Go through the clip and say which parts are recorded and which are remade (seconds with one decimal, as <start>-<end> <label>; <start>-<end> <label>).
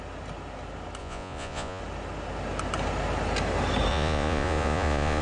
0.0-1.0 recorded; 1.0-1.8 remade; 1.8-3.9 recorded; 3.9-5.2 remade